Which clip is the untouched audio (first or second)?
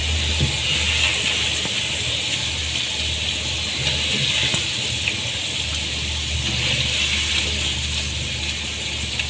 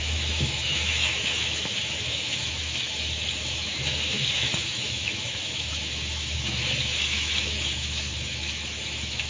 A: first